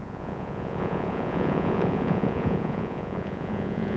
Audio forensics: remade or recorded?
remade